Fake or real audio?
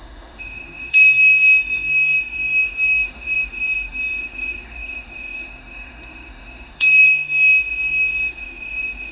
fake